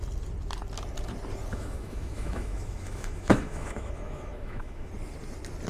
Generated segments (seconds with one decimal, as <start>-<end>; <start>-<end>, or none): 1.5-4.9